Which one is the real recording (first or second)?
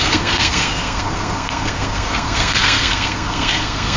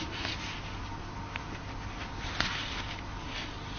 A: second